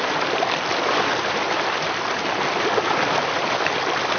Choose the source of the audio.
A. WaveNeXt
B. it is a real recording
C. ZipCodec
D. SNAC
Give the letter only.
B